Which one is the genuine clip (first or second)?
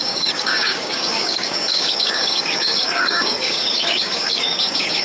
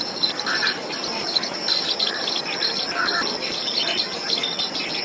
second